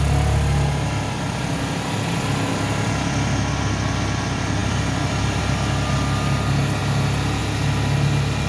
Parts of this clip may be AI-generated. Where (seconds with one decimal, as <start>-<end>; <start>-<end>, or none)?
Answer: 4.6-5.4